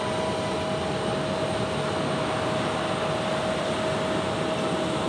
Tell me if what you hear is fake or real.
real